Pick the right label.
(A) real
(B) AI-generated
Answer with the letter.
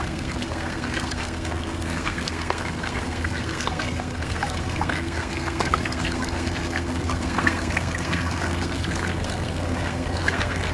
B